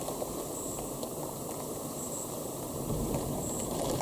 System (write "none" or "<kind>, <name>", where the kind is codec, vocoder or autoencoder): vocoder, BigVGAN v2